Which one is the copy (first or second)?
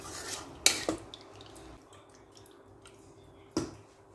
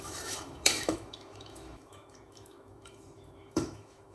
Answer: second